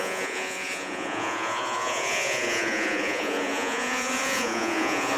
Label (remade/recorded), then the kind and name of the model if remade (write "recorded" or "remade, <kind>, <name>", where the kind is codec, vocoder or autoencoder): remade, vocoder, Vocos